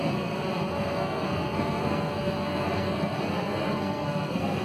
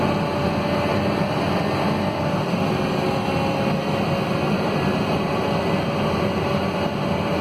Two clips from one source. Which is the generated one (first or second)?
first